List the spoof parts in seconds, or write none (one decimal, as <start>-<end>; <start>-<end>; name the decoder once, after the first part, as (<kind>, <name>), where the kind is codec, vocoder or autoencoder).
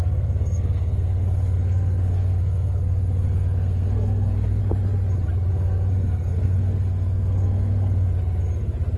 0.0-4.6 (codec, SNAC); 5.5-8.1